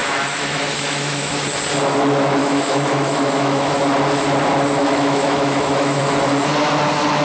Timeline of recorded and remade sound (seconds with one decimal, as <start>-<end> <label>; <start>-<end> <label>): 0.0-1.3 remade; 1.3-2.4 recorded; 2.4-3.8 remade; 3.8-4.8 recorded; 4.8-6.0 remade; 6.0-7.2 recorded